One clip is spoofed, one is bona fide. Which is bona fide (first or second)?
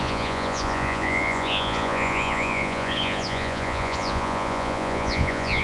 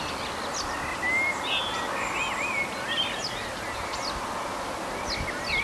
second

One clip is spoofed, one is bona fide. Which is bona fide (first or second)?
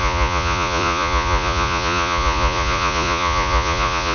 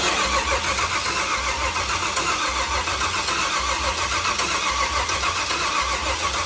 second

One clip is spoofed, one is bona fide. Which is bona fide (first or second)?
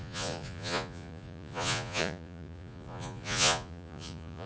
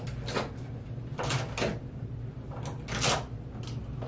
second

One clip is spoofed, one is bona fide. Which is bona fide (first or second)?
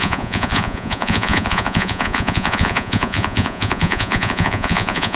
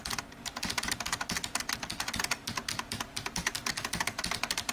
second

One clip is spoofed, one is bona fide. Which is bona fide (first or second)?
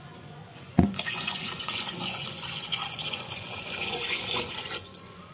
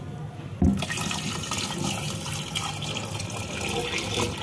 second